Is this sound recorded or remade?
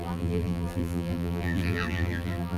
remade